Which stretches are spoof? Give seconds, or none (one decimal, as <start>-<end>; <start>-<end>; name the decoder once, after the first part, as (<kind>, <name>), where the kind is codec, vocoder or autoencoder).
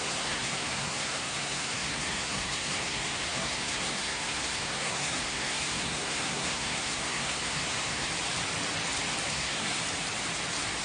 0.0-8.1 (codec, SNAC); 9.3-9.8